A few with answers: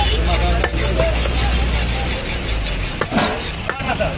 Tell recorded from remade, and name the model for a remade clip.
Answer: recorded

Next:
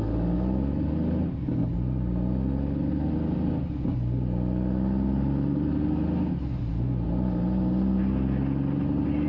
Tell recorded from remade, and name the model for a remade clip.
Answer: recorded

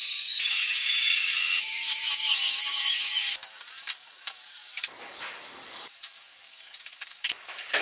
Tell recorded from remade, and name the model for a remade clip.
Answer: remade, codec, DAC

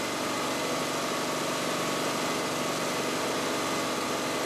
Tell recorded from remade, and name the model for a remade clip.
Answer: recorded